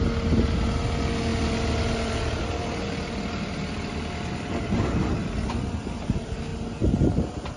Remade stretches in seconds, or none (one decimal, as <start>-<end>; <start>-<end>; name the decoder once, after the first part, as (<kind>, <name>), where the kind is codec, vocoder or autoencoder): none